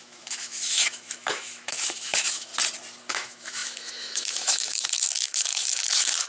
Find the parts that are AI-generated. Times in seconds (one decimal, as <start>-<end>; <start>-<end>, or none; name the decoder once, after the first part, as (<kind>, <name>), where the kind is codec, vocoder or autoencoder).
0.0-2.5 (autoencoder, DAC-VAE); 3.1-6.3